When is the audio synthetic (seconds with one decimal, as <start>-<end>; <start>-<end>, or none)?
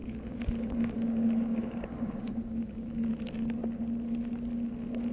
0.0-3.1